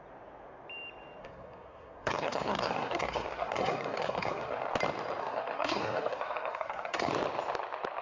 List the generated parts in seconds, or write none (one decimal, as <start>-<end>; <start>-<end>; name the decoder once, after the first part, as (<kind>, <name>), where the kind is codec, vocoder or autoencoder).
1.2-4.7 (codec, SNAC); 5.2-7.1